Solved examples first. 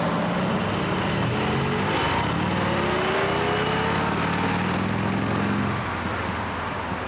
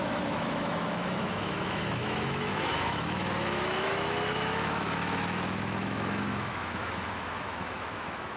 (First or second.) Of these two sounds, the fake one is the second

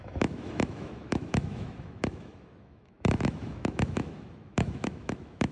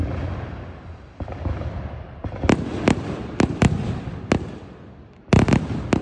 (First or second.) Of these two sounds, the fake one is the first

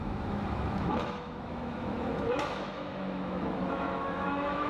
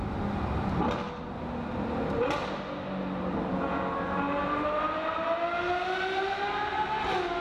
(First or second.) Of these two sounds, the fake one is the first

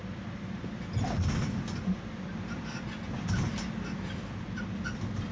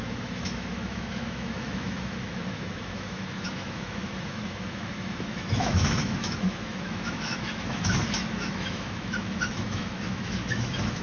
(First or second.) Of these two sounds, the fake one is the second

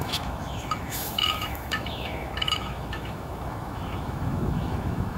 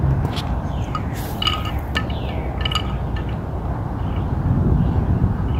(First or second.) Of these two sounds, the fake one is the first